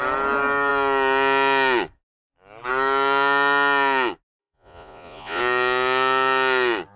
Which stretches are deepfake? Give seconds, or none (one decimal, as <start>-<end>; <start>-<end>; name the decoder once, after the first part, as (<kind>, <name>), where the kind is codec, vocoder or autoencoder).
4.4-5.4 (vocoder, Vocos)